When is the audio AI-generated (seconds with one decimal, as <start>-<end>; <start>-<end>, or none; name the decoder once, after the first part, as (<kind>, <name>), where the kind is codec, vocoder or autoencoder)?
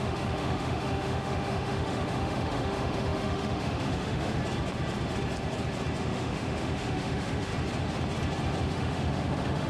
0.0-4.4 (autoencoder, DAC-VAE); 6.0-7.5; 8.6-9.7